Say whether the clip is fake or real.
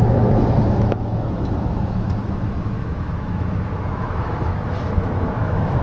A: fake